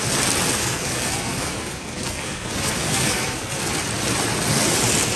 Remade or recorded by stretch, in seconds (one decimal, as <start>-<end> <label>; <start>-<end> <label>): 0.0-0.6 recorded; 0.6-3.7 remade; 3.7-5.2 recorded